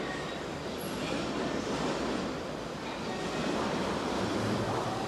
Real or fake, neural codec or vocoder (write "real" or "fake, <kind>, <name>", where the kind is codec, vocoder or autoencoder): real